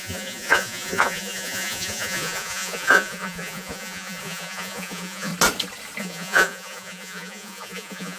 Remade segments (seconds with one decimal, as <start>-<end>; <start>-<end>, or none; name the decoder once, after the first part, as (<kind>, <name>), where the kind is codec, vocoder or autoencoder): 0.0-5.3 (vocoder, Vocos); 6.0-8.2